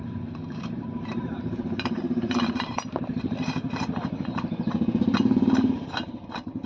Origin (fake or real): fake